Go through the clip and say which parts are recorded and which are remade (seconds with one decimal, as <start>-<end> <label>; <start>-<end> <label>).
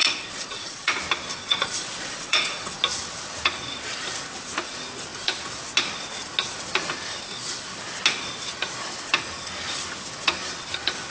0.0-1.0 remade; 1.0-1.4 recorded; 1.4-2.8 remade; 2.8-11.1 recorded